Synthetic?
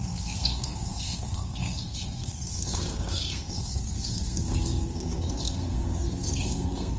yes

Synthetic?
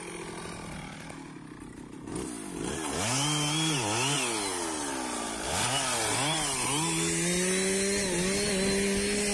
no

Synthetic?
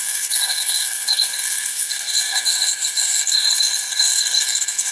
yes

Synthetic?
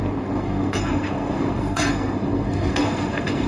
yes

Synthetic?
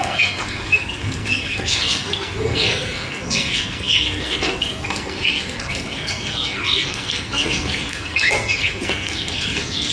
yes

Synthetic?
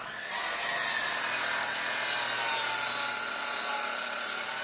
no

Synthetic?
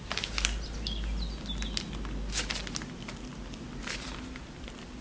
no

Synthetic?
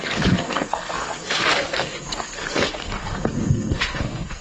yes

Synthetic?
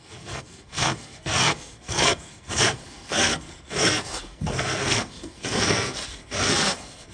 yes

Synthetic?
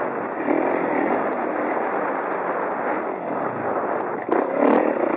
no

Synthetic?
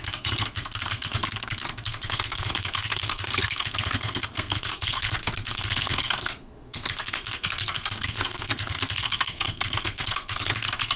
yes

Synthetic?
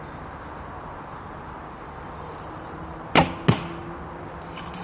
no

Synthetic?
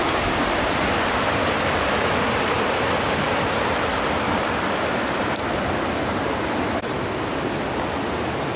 no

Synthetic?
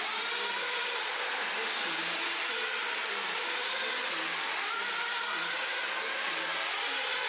no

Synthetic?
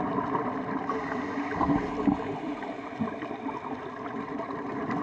no